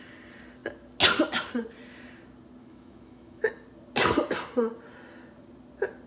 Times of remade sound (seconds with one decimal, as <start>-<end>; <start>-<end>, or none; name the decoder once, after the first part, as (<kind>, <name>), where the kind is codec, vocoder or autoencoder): 2.6-3.5 (autoencoder, DAC-VAE)